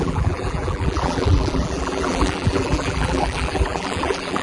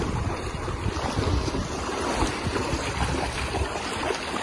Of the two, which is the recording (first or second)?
second